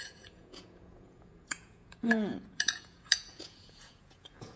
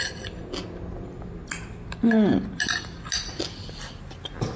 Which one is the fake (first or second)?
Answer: first